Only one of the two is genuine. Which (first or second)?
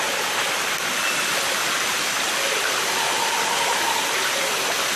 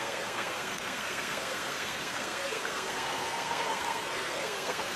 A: first